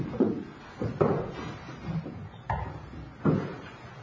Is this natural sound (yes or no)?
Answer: no